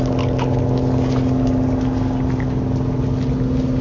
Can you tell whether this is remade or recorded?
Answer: recorded